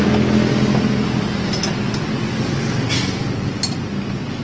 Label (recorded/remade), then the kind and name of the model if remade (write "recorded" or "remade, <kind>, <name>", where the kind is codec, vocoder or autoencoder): recorded